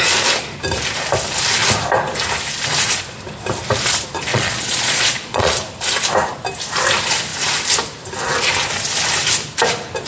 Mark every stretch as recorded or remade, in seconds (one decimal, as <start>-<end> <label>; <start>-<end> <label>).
0.0-4.3 recorded; 4.3-5.5 remade; 5.5-10.1 recorded